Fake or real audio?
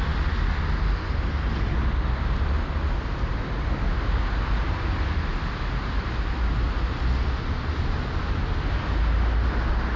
real